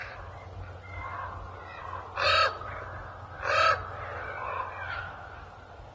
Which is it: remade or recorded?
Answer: recorded